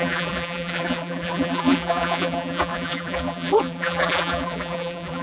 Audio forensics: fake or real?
fake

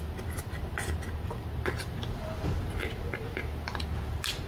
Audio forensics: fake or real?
real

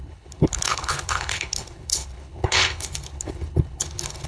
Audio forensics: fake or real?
fake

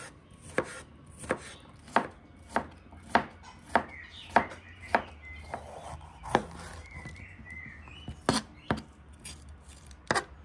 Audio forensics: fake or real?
real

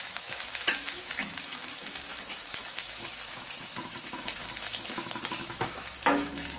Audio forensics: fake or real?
fake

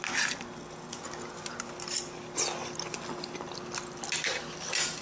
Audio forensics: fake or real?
real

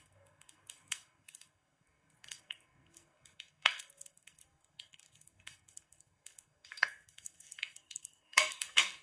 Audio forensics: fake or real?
fake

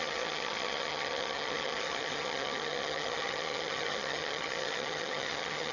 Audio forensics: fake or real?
fake